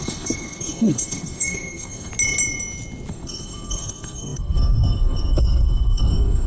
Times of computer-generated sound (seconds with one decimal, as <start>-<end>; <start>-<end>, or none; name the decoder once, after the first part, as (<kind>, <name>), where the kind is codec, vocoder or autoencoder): 0.0-2.1 (codec, SNAC); 3.1-6.5